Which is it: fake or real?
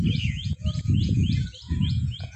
fake